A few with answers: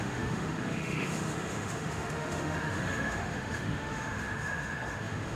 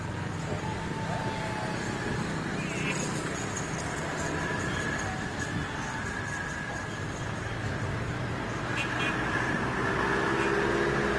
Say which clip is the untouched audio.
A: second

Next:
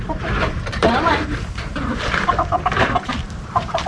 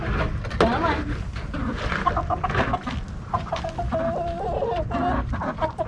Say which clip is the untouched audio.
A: second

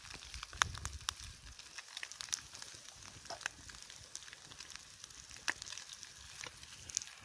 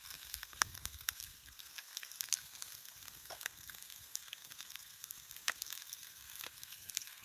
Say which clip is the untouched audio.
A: first